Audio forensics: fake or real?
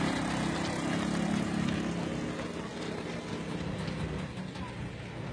real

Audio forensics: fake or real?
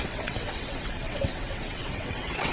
fake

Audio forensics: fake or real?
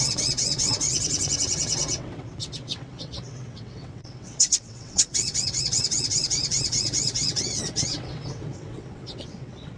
fake